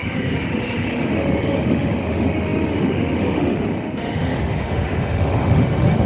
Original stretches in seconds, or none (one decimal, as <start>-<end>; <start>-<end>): none